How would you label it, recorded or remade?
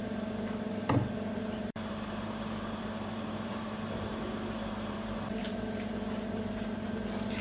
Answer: remade